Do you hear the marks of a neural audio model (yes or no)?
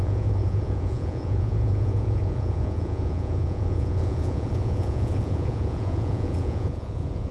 yes